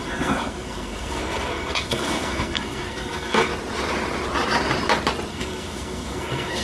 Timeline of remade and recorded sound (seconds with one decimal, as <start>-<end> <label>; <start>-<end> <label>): 0.0-3.5 remade; 3.5-5.3 recorded; 5.3-6.6 remade